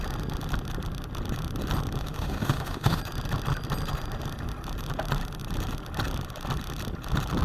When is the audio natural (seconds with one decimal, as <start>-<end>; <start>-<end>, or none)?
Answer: 0.0-2.0; 3.0-7.4

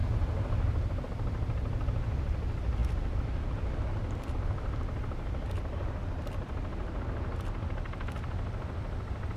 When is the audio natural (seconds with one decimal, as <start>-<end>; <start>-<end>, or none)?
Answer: 0.0-9.4

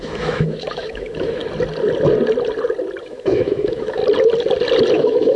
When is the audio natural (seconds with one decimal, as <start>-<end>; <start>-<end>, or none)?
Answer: 1.4-3.0; 4.0-4.9

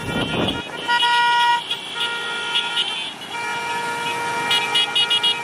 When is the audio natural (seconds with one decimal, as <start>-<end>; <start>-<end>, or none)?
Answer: 0.0-5.4

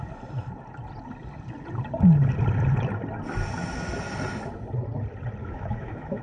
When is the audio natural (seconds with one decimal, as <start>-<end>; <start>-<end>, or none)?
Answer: 0.0-5.4

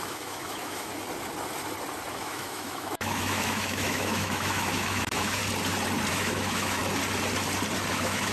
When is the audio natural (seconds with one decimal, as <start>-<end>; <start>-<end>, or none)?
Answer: 0.9-2.1; 5.4-6.1; 6.8-7.9